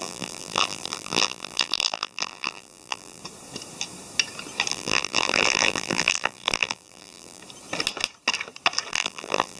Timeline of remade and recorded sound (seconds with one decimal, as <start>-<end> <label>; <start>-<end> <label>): 0.0-3.2 remade; 3.2-4.7 recorded; 4.7-7.4 remade; 7.4-8.9 recorded; 8.9-9.6 remade